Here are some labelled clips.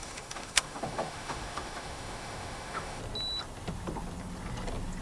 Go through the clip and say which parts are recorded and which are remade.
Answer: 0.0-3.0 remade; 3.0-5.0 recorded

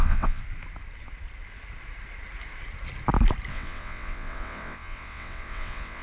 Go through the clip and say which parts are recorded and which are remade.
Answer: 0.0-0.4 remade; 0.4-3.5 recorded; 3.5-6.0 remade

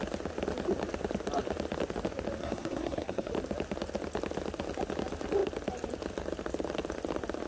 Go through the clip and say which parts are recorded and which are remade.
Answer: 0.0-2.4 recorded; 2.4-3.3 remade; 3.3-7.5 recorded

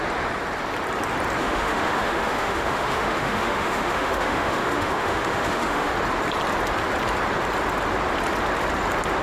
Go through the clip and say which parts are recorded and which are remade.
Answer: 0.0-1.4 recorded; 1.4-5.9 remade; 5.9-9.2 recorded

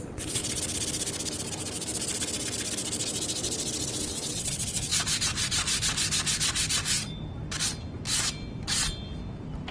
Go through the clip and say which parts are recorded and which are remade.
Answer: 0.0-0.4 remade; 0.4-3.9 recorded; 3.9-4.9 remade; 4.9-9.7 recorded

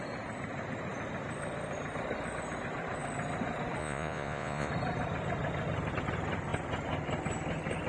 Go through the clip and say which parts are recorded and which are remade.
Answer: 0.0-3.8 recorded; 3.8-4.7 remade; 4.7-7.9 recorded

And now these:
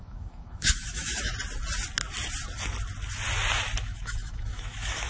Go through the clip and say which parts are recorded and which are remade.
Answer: 0.0-1.3 remade; 1.3-3.8 recorded; 3.8-5.1 remade

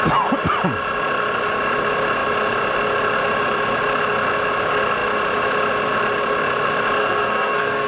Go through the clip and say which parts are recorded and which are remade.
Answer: 0.0-7.0 recorded; 7.0-7.9 remade